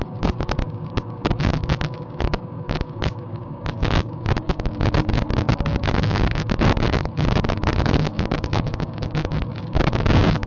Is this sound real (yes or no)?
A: no